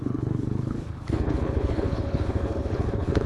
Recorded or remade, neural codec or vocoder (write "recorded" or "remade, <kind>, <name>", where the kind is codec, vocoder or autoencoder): remade, codec, HILCodec